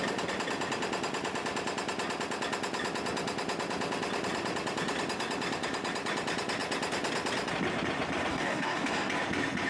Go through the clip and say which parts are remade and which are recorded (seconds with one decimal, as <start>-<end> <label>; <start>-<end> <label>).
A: 0.0-8.3 recorded; 8.3-9.1 remade; 9.1-9.7 recorded